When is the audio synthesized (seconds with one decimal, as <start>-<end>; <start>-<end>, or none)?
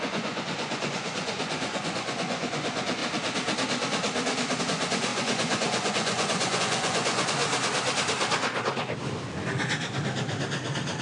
0.0-3.0; 4.6-7.4